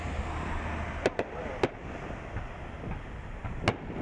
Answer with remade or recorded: recorded